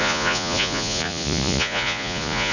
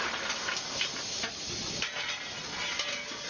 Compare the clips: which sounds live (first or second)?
second